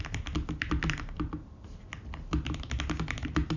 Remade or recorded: recorded